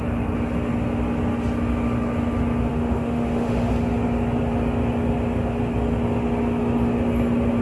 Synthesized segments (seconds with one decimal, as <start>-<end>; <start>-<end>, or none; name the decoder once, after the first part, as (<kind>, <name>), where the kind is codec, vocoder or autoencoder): 2.7-3.7 (autoencoder, DAC-VAE)